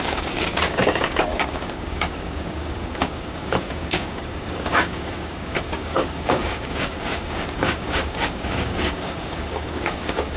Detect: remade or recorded remade